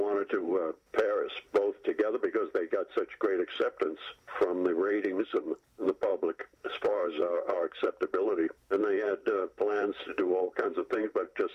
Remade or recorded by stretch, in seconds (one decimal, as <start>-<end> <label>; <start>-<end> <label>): 0.0-0.5 remade; 0.5-5.2 recorded; 5.2-11.5 remade